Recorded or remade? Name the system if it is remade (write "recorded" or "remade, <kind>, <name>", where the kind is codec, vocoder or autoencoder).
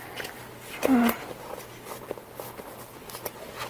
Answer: recorded